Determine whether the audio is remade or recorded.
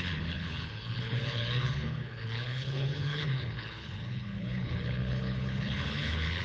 remade